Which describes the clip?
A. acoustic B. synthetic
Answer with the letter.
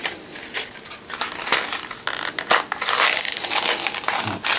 A